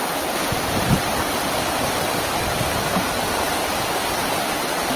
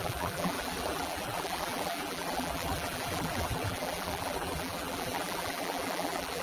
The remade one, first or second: second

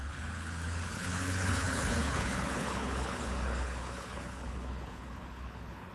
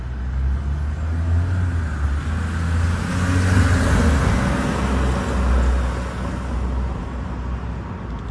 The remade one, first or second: first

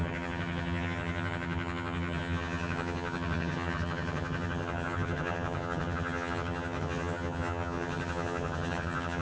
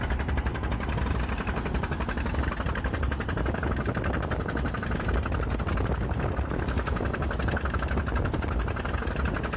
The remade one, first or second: first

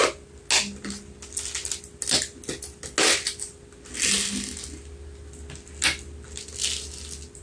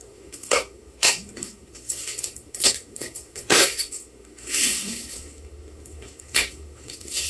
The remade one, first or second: second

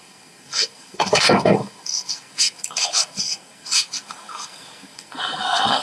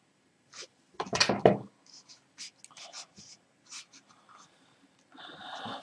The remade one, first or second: first